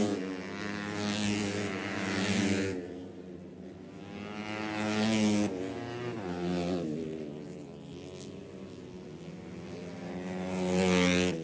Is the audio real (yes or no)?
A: yes